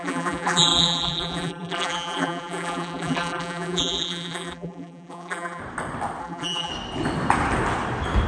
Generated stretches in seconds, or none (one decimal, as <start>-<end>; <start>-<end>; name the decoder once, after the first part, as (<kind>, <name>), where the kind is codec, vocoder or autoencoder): 0.0-5.6 (vocoder, BigVGAN v2); 6.2-6.7